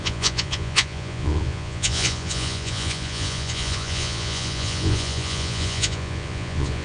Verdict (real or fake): fake